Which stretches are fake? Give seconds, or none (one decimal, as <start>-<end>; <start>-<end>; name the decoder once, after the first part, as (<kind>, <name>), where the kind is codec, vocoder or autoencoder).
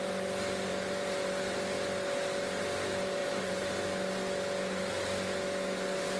3.2-3.7 (vocoder, BigVGAN v2)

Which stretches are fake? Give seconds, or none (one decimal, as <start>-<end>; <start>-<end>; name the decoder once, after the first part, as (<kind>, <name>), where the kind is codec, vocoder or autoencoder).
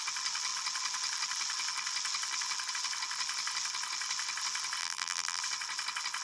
4.8-5.4 (vocoder, BigVGAN v2)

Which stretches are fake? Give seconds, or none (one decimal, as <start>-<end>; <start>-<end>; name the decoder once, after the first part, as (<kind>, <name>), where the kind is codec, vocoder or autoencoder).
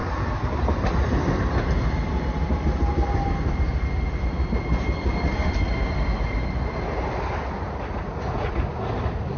none